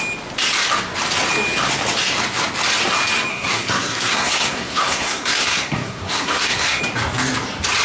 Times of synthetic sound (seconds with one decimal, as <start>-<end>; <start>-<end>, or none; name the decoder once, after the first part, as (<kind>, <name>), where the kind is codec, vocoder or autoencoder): 3.3-6.8 (codec, SNAC)